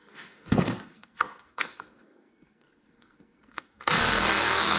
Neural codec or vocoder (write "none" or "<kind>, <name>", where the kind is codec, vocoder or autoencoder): codec, SNAC